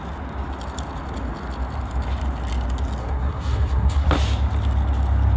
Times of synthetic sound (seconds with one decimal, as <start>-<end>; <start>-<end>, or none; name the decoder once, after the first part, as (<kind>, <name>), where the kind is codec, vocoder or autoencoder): 3.0-4.1 (codec, SNAC)